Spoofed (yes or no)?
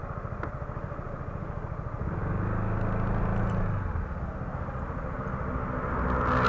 no